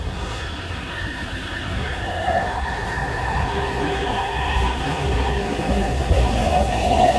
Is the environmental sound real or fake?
fake